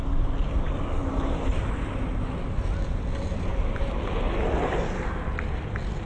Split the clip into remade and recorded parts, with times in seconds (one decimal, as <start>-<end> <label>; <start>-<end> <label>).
0.0-6.1 recorded